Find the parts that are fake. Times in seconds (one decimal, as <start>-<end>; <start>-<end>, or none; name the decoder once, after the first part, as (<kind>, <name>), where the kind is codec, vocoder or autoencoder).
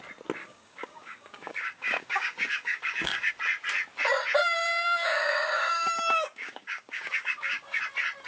0.4-3.3 (codec, DAC); 4.4-7.8